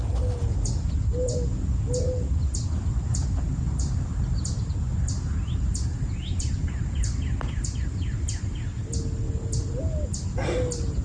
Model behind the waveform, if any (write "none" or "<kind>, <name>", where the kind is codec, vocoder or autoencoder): none